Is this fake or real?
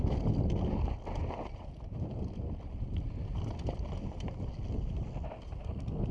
real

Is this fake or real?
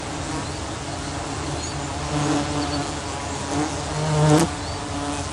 real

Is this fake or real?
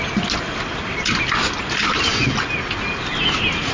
real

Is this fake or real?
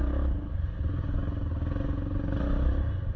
real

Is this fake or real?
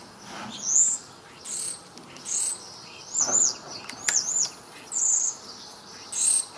real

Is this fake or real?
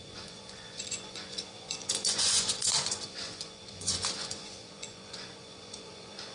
fake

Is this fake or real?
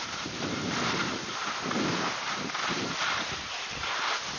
fake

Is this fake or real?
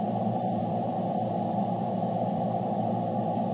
fake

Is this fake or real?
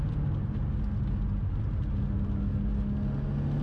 real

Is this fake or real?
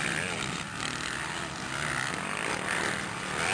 fake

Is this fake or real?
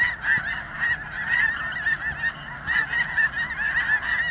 real